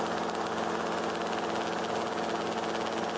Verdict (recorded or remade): recorded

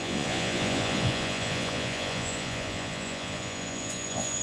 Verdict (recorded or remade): remade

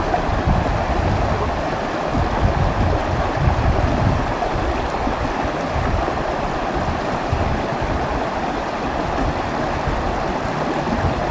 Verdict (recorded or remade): recorded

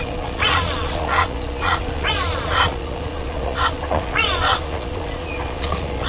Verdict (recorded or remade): remade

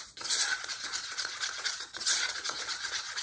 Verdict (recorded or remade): remade